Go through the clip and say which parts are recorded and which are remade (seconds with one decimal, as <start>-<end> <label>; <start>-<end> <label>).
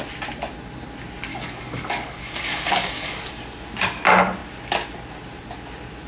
0.0-1.3 recorded; 1.3-3.2 remade; 3.2-6.1 recorded